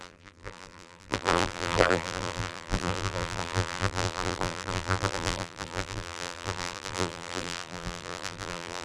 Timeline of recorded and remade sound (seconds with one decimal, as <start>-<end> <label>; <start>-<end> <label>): 0.0-8.8 remade